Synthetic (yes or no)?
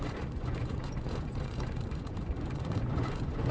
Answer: yes